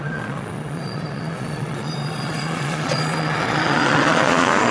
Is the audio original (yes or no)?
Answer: no